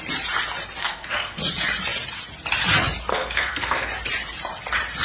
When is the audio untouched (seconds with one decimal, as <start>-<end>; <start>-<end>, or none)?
0.0-0.8; 1.4-3.1; 3.9-5.0

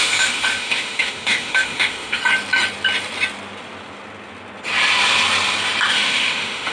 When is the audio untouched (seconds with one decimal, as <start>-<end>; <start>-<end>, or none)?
2.2-5.9